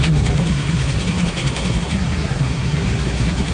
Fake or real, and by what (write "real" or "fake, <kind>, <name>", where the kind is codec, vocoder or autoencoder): fake, codec, SNAC